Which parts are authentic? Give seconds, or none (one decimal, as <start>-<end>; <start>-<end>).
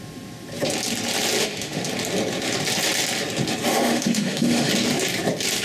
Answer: 0.0-1.4; 1.9-3.7; 4.7-5.6